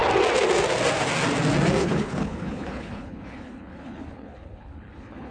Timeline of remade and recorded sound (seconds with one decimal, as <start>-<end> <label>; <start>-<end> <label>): 0.0-1.8 recorded; 1.8-5.3 remade

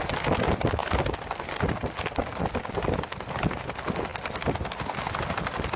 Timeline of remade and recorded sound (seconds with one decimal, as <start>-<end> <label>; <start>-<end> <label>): 0.0-5.8 recorded

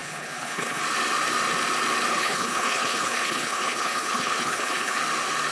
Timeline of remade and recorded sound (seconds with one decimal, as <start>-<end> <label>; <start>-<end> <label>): 0.0-0.8 remade; 0.8-2.1 recorded; 2.1-5.0 remade; 5.0-5.5 recorded

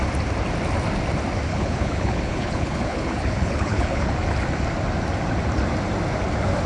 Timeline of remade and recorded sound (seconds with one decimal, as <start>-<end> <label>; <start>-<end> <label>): 0.0-1.5 recorded; 1.5-4.1 remade; 4.1-6.7 recorded